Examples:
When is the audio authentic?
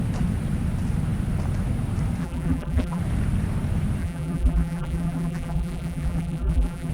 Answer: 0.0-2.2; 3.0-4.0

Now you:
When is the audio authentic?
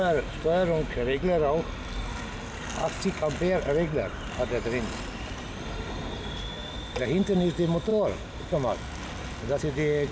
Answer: 0.0-10.1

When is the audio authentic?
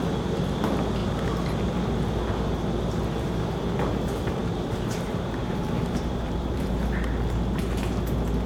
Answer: 0.0-4.4; 6.8-8.5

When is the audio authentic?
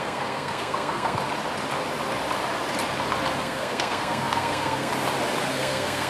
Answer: 1.2-3.4; 4.9-5.5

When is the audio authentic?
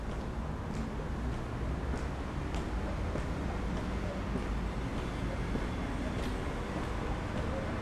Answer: 0.0-7.8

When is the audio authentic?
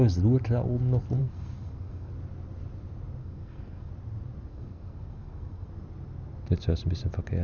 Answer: 0.0-1.2; 2.1-3.2; 3.9-4.5; 5.7-7.4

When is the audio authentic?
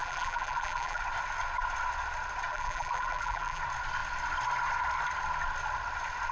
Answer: 1.0-2.5; 3.6-6.3